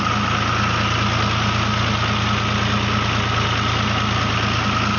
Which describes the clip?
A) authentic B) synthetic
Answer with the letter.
A